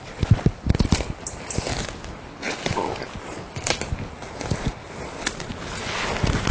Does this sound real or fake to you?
real